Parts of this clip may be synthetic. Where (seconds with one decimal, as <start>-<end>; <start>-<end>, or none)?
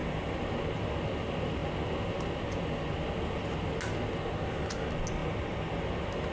none